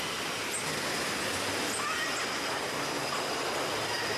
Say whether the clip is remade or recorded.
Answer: recorded